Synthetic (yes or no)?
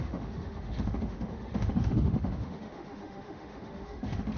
yes